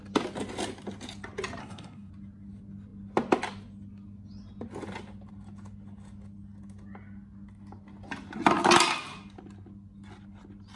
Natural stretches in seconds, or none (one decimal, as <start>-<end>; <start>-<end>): 0.0-1.6; 2.1-10.8